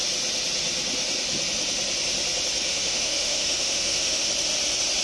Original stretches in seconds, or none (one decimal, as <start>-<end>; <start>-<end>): 0.0-2.7; 4.3-5.0